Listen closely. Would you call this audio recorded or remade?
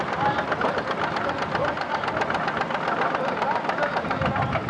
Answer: recorded